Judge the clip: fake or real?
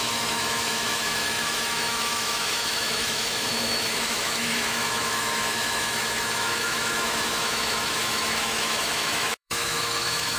fake